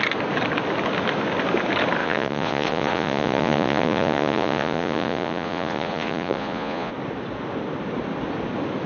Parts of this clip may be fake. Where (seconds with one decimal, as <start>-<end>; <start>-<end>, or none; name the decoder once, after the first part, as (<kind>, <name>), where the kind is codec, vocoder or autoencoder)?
2.0-6.9 (vocoder, Vocos)